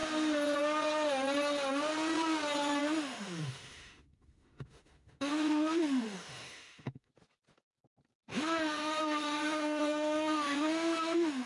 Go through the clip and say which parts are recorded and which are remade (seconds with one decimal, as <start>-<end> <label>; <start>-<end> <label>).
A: 0.0-2.8 recorded; 2.8-7.1 remade; 7.1-8.3 recorded; 8.3-11.5 remade